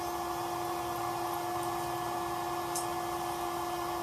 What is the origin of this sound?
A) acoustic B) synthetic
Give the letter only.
A